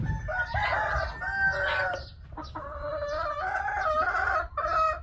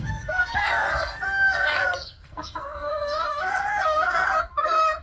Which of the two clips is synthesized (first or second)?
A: second